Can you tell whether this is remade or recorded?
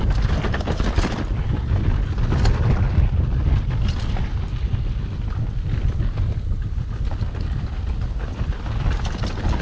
recorded